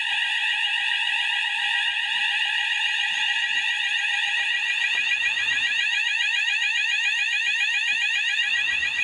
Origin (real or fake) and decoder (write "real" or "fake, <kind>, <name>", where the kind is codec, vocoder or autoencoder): real